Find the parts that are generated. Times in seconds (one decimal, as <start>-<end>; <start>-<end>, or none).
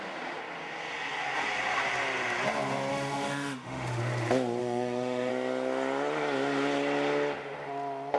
2.9-4.0; 4.6-5.3